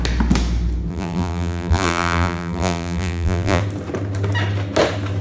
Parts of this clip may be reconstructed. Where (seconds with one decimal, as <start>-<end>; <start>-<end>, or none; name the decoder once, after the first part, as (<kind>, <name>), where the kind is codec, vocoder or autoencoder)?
0.9-3.6 (vocoder, BigVGAN v2)